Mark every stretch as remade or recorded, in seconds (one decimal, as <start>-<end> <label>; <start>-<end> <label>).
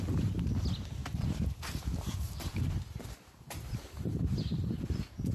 0.0-1.0 recorded; 1.0-4.2 remade; 4.2-5.3 recorded